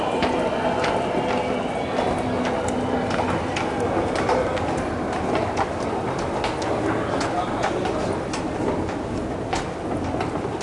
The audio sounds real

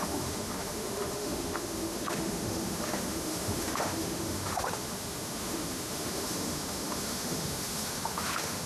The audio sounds fake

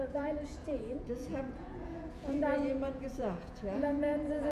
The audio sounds fake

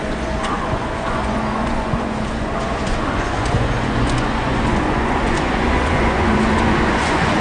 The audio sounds fake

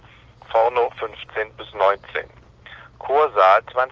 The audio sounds real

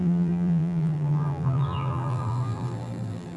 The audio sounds fake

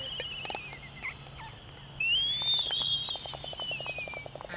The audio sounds real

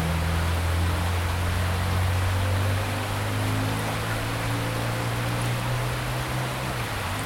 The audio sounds real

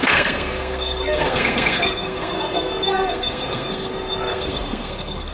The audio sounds fake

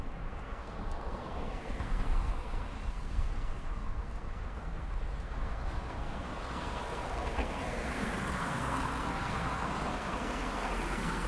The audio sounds fake